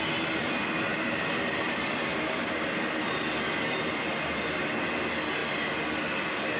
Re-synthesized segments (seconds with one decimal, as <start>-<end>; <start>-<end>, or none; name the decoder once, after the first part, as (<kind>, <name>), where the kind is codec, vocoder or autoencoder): 0.9-4.9 (vocoder, BigVGAN v2)